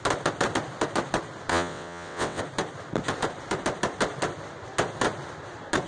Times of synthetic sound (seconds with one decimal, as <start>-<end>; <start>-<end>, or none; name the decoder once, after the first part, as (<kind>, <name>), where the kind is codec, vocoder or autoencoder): 1.5-2.4 (vocoder, WaveNeXt)